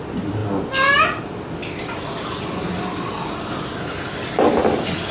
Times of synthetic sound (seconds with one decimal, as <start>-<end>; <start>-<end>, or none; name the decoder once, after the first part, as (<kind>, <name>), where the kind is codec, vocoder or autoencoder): none